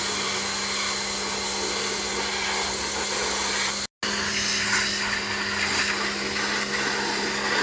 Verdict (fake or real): real